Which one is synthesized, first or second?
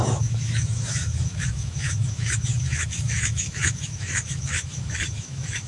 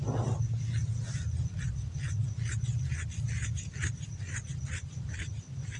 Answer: first